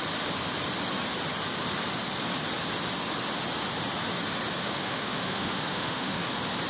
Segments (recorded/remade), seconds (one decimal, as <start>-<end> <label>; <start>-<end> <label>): 0.0-4.6 recorded; 4.6-6.2 remade; 6.2-6.7 recorded